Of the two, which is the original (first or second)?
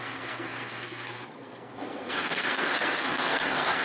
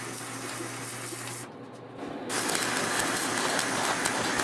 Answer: second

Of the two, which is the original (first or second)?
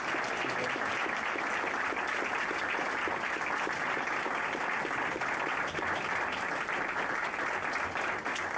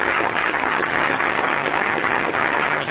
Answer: first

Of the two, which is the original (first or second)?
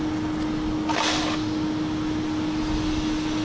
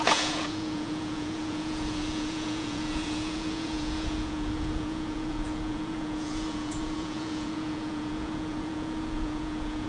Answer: first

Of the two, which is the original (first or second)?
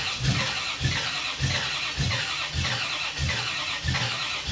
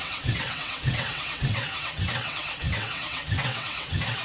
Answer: first